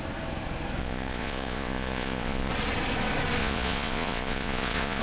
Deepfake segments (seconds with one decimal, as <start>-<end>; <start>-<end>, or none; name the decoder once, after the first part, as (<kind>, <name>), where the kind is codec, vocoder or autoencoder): 0.8-2.5 (vocoder, Vocos); 3.4-5.0